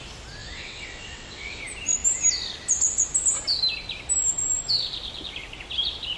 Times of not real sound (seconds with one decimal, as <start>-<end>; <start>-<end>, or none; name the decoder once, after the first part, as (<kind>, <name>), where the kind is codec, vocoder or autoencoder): 0.4-1.6 (vocoder, WaveNeXt)